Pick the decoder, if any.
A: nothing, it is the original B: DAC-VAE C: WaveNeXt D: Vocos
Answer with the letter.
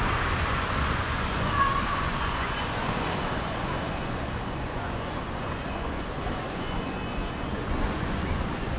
D